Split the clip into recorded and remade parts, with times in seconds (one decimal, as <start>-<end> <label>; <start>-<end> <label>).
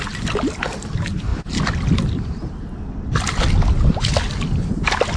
0.0-5.2 recorded